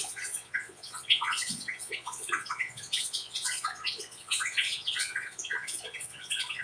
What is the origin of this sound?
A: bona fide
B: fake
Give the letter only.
B